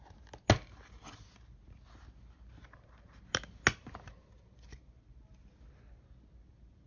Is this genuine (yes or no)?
yes